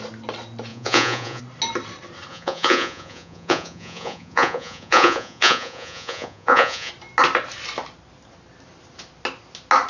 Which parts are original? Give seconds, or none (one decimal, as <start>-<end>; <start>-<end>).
0.0-0.7; 1.4-2.3; 6.9-9.9